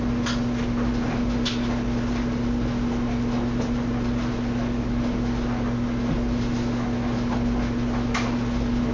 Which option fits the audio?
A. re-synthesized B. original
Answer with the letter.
B